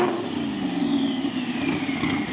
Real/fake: real